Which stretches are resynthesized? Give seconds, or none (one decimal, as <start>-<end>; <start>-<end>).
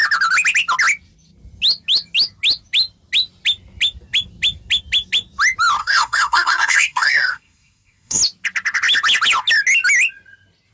5.8-8.2